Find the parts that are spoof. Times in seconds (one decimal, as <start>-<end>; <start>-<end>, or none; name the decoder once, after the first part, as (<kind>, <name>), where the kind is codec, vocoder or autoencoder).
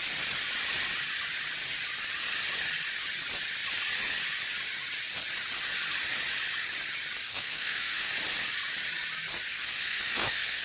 7.3-8.1 (codec, SNAC); 9.5-10.6